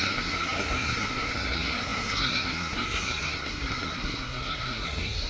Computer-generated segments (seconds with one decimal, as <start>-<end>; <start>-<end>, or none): 0.0-5.3